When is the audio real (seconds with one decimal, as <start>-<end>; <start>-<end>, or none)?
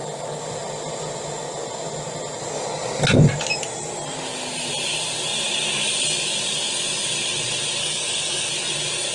0.0-7.8; 8.5-9.1